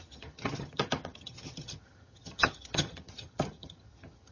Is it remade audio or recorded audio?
remade